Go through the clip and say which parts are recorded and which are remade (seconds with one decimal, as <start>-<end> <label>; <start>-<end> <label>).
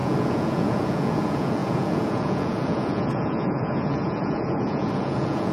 0.0-5.5 remade